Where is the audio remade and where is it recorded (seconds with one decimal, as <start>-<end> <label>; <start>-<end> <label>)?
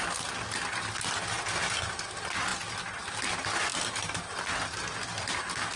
0.0-3.7 recorded; 3.7-4.2 remade; 4.2-5.8 recorded